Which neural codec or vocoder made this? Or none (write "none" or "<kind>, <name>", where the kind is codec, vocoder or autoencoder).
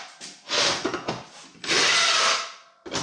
none